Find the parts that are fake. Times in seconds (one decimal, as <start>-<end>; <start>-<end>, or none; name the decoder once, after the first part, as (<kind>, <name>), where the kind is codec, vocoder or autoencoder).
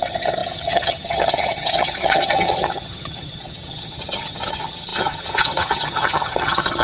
0.0-6.8 (vocoder, HiFi-GAN)